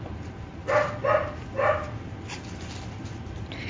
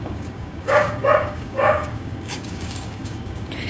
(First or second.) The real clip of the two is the first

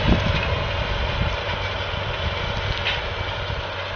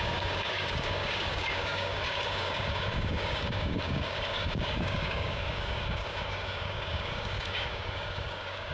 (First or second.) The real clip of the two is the first